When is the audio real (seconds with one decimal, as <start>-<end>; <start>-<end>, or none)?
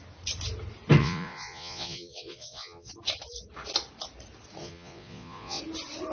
0.0-1.0; 2.9-4.6; 5.6-6.1